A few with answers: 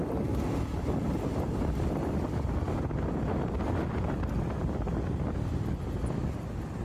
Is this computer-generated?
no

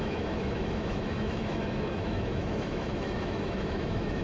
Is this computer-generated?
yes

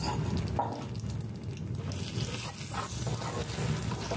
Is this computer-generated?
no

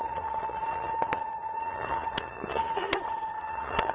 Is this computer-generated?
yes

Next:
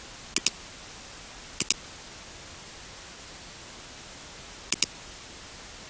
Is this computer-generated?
no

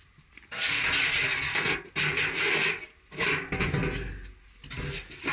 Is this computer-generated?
no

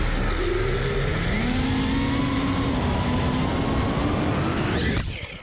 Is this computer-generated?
no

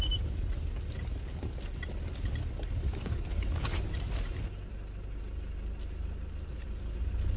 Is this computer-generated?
no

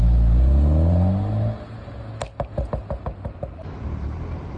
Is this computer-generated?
no